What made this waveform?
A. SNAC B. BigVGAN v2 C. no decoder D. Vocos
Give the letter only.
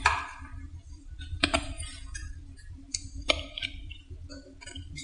B